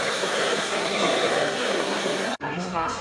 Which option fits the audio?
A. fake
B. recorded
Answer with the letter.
A